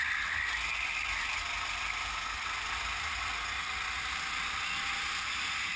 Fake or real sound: real